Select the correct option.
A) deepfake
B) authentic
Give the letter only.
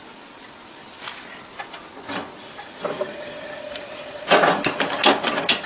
B